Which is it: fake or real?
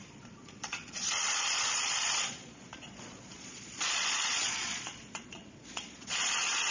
fake